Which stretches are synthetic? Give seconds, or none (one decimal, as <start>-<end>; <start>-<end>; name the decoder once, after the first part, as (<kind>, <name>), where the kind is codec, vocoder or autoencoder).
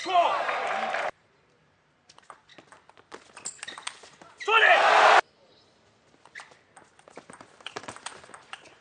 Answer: 0.0-2.5 (vocoder, BigVGAN v2); 7.3-8.8